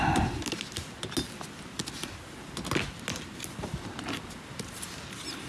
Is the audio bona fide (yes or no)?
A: yes